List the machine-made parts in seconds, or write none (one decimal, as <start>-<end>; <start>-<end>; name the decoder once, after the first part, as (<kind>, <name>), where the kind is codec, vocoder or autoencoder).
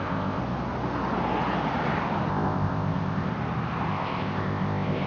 0.0-0.4 (codec, ZipCodec); 2.3-3.3; 3.9-5.1